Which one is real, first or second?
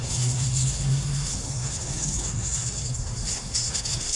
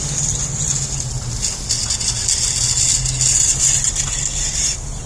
second